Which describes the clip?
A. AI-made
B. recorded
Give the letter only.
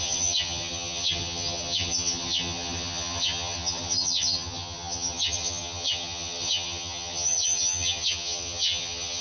A